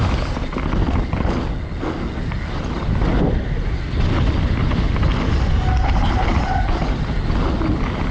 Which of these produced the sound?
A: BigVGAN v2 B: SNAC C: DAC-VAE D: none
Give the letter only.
D